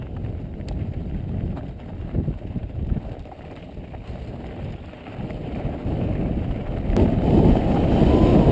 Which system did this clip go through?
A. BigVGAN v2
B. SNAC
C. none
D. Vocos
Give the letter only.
C